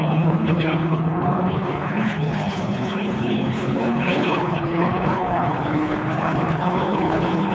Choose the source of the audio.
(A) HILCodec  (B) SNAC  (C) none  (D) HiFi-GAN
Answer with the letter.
A